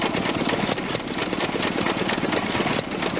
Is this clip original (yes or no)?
yes